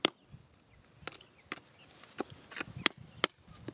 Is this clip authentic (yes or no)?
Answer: no